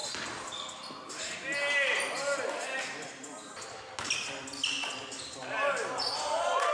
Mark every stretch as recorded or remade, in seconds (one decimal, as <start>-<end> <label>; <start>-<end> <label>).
0.0-6.7 recorded